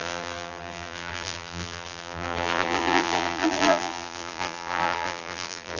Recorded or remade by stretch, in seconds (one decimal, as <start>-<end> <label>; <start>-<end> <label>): 0.0-5.8 remade

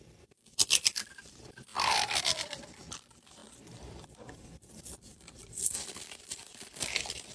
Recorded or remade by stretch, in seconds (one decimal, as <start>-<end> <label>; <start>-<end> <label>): 0.0-1.7 remade; 1.7-2.2 recorded; 2.2-7.3 remade

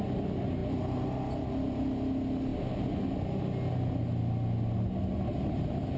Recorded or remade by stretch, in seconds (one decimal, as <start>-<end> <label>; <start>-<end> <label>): 0.0-6.0 recorded

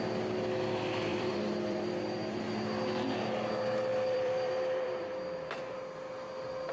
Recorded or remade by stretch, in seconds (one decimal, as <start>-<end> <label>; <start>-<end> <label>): 0.0-1.1 recorded; 1.1-2.3 remade; 2.3-3.9 recorded; 3.9-5.1 remade; 5.1-6.7 recorded

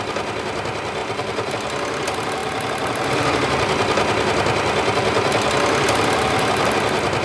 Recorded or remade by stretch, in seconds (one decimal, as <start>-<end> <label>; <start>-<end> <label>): 0.0-1.0 recorded; 1.0-1.5 remade; 1.5-7.2 recorded

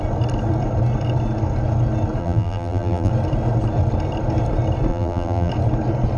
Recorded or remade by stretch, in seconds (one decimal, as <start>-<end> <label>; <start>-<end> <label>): 0.0-2.2 recorded; 2.2-3.1 remade; 3.1-4.9 recorded; 4.9-5.5 remade; 5.5-6.2 recorded

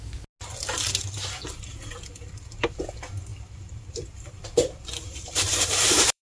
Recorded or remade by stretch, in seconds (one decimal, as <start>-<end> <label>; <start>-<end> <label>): 0.0-3.3 recorded; 3.3-6.2 remade

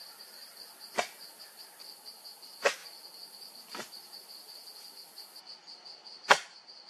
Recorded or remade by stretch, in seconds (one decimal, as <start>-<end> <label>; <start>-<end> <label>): 0.0-0.5 remade; 0.5-6.0 recorded; 6.0-6.9 remade